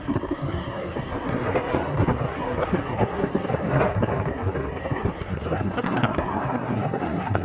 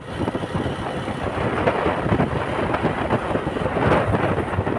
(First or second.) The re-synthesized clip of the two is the first